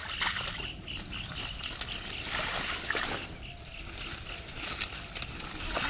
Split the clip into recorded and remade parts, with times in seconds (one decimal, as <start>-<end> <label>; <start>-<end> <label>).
0.0-5.9 recorded